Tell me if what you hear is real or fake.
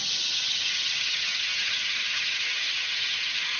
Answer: fake